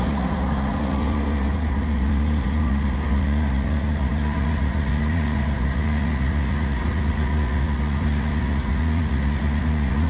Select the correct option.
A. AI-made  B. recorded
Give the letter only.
A